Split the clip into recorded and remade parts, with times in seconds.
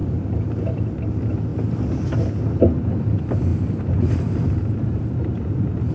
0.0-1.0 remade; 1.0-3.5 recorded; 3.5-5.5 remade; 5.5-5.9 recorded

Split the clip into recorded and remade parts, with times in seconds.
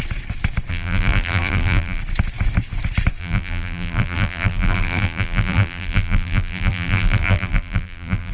0.0-0.7 recorded; 0.7-2.0 remade; 2.0-3.2 recorded; 3.2-8.3 remade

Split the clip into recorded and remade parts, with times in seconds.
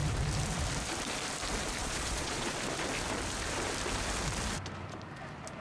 0.0-1.8 recorded; 1.8-2.6 remade; 2.6-5.6 recorded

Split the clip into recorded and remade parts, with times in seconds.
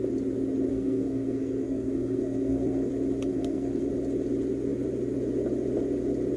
0.0-0.7 recorded; 0.7-2.9 remade; 2.9-3.3 recorded; 3.3-3.9 remade; 3.9-6.4 recorded